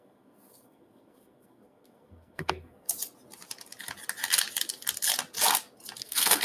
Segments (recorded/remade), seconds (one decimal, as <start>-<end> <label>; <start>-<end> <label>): 0.0-2.9 remade; 2.9-6.0 recorded; 6.0-6.4 remade